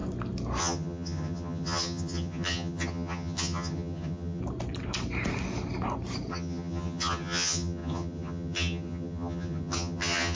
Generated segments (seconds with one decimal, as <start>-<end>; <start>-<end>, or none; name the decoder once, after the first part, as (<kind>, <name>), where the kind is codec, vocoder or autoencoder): 0.6-4.4 (vocoder, HiFi-GAN); 6.3-10.4